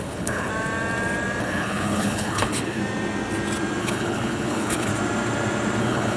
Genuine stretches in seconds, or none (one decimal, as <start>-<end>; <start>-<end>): 0.5-1.4; 2.8-3.8; 4.9-5.8